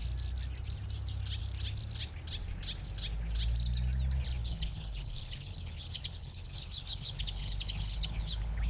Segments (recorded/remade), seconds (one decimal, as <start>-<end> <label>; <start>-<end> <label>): 0.0-4.4 recorded; 4.4-8.7 remade